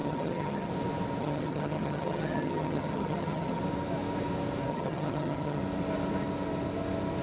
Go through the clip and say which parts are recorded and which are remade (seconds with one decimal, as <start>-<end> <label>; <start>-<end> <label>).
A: 0.0-0.7 remade; 0.7-1.2 recorded; 1.2-3.6 remade; 3.6-4.7 recorded; 4.7-5.6 remade; 5.6-7.2 recorded